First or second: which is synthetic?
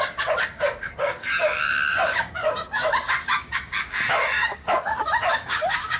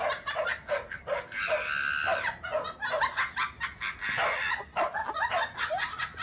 first